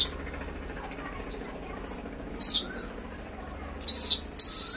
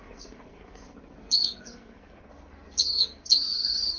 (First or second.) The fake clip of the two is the second